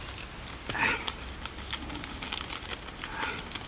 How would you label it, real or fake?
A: real